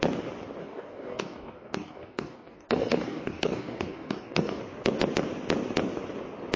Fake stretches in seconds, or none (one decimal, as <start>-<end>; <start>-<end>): 0.6-4.6